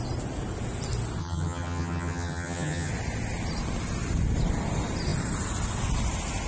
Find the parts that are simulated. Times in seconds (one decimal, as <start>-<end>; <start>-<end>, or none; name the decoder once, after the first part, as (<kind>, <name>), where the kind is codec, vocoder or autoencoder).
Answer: 1.2-2.9 (vocoder, HiFi-GAN)